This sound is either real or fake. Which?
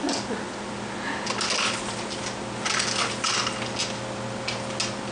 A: real